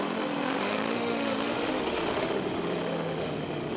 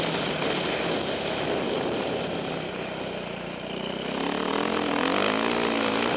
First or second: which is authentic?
second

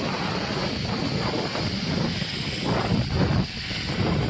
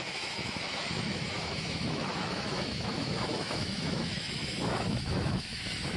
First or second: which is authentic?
first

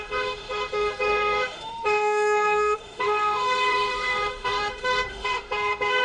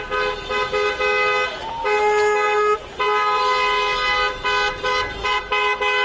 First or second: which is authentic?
second